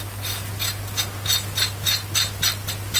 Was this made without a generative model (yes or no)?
yes